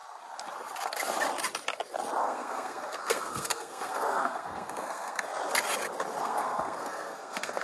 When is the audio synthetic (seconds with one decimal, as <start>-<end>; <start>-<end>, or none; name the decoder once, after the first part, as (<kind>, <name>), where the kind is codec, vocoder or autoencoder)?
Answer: 2.2-5.3 (codec, SNAC); 6.2-7.6